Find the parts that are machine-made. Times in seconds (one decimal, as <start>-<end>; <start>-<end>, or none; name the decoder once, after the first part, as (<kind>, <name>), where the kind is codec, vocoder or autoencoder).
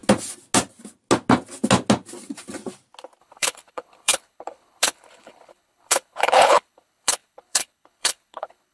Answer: 3.2-8.7 (codec, HILCodec)